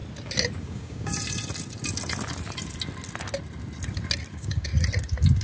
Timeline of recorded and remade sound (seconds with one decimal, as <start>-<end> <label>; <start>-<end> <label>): 0.0-0.6 recorded; 0.6-1.1 remade; 1.1-4.3 recorded; 4.3-4.7 remade; 4.7-5.4 recorded